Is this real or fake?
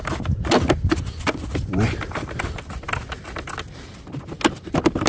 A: real